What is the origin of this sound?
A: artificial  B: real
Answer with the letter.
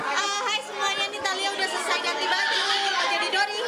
B